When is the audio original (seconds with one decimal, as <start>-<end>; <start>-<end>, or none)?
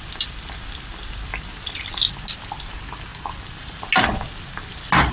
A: 0.0-3.1; 3.8-5.1